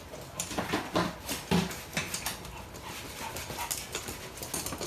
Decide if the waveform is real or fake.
real